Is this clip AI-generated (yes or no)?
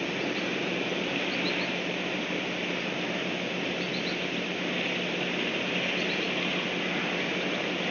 no